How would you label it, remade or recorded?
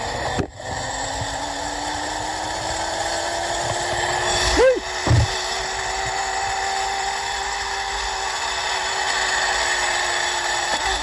recorded